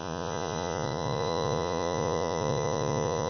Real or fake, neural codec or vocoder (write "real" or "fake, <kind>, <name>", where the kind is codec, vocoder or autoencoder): fake, vocoder, Vocos